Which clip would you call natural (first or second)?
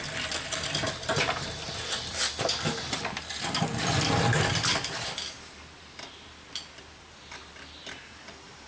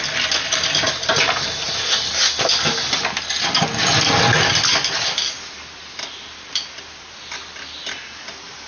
second